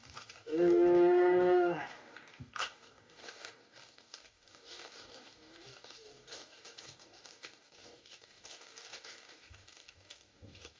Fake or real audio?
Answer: fake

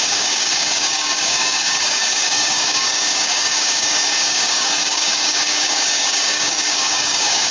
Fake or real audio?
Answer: fake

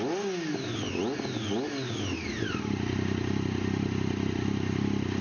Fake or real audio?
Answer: real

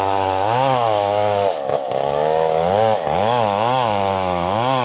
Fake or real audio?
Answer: fake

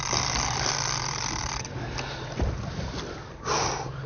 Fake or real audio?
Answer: real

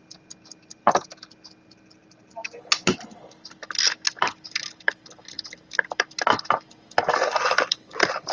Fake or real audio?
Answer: real